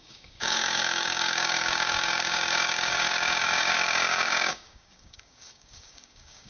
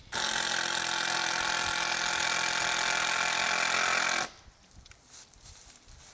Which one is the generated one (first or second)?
first